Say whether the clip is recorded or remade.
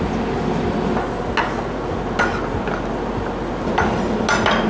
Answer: recorded